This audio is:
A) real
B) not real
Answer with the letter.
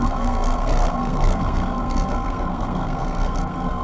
B